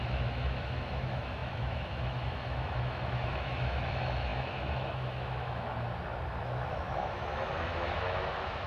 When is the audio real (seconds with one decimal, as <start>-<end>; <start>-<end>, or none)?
5.7-6.4